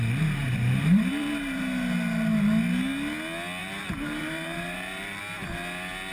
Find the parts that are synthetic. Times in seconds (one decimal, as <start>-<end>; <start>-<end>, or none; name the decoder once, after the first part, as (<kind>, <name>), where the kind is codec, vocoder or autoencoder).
0.4-1.6 (vocoder, BigVGAN v2); 3.6-5.2